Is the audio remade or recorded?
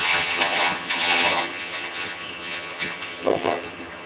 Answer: remade